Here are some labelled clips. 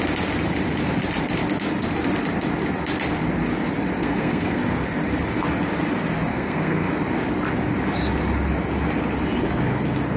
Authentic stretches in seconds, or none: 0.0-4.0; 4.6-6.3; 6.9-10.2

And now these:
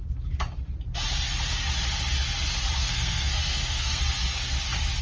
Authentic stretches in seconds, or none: 0.0-2.8; 4.0-5.0

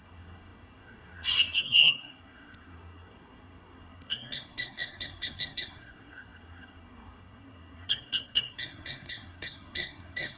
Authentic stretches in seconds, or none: none

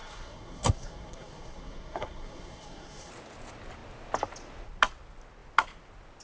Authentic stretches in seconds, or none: 3.1-6.2

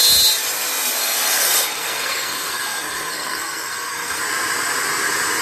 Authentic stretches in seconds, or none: 0.0-1.0; 4.2-5.4